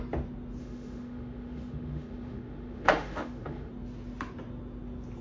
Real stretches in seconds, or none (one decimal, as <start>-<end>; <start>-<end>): 0.0-0.6; 3.7-5.2